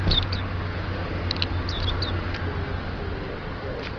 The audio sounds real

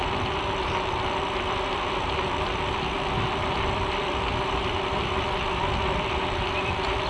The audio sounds fake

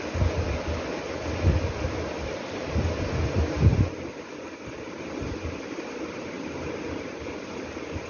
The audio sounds fake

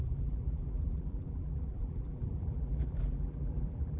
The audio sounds fake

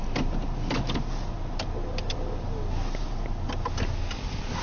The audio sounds real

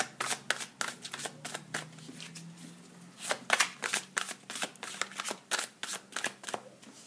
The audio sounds real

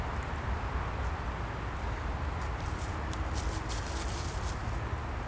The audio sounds real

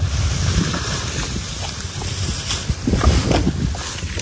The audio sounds real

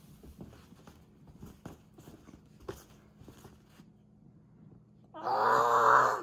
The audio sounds real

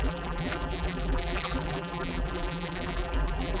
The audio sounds fake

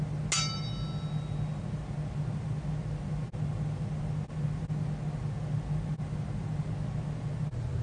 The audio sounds real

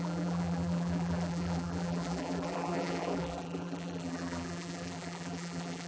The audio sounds fake